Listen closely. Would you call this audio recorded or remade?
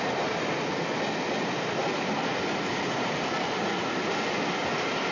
recorded